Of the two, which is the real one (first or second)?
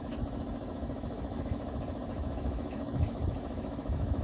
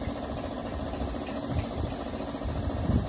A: second